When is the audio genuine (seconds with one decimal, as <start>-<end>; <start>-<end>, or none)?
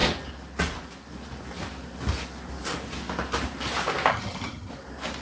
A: 0.0-4.1; 4.7-5.2